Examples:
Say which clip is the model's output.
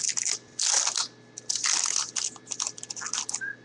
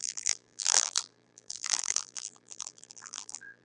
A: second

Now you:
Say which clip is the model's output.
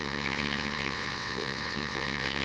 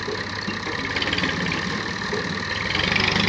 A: first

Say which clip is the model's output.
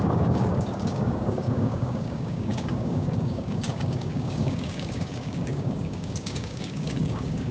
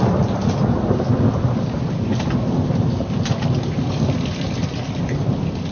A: first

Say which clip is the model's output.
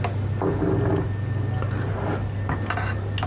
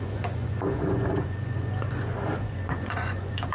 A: second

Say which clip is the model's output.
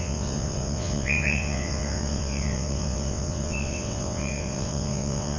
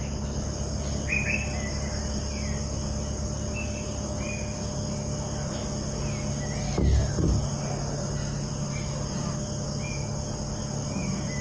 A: first